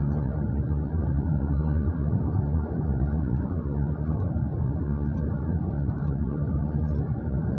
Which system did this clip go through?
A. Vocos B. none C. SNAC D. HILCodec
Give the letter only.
A